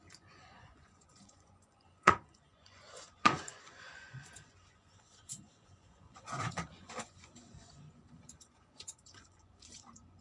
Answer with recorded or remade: remade